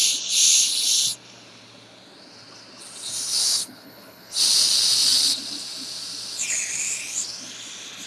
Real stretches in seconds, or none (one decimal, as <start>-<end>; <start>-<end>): 0.0-3.4; 4.4-8.1